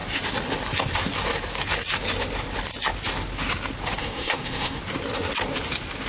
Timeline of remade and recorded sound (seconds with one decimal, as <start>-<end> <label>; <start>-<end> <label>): 0.0-4.0 recorded; 4.0-4.8 remade; 4.8-6.1 recorded